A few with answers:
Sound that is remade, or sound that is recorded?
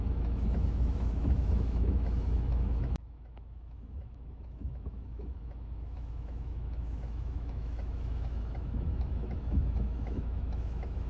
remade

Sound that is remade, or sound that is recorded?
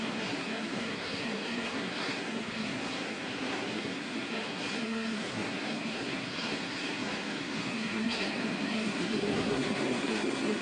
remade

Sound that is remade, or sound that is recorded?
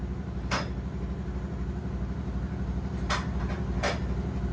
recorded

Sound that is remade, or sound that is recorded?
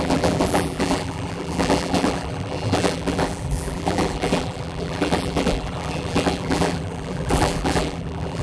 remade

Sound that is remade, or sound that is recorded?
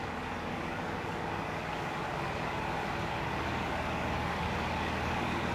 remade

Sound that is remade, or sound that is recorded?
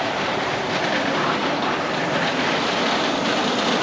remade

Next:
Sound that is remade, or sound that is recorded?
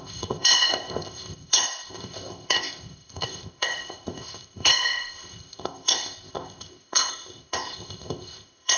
remade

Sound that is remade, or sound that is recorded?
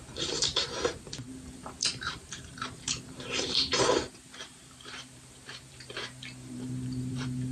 remade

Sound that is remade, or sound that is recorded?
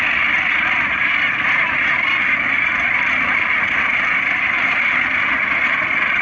recorded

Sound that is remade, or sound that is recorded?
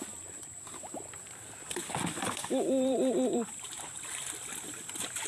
remade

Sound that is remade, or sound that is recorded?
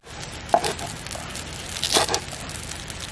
recorded